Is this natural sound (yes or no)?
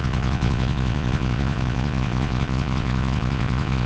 no